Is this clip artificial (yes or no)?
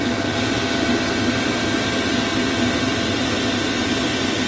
no